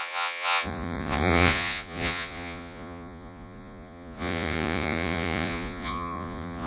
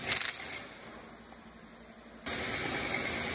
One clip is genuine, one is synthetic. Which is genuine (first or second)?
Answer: second